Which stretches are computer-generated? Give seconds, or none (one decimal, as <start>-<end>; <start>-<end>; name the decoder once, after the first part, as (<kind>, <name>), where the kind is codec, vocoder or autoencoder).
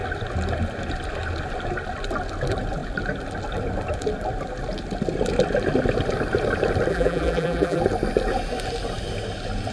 6.9-7.8 (vocoder, BigVGAN v2)